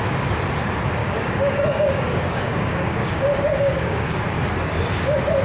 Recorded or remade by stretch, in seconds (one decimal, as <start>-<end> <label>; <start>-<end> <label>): 0.0-1.0 recorded; 1.0-4.2 remade; 4.2-5.4 recorded